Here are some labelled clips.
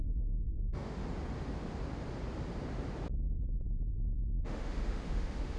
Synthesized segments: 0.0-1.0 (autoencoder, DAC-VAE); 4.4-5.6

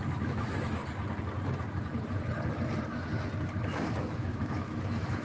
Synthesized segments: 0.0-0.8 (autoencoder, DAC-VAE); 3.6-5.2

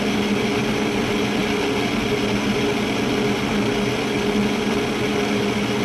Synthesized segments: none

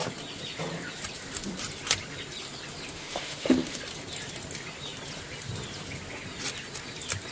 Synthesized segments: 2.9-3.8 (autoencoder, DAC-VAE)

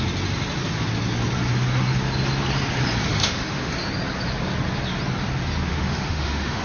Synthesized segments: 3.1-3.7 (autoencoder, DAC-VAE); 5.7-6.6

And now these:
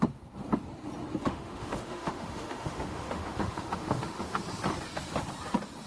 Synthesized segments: 1.2-4.4 (autoencoder, DAC-VAE)

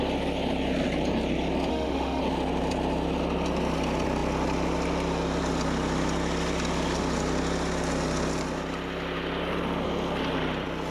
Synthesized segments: 1.7-2.2 (autoencoder, DAC-VAE)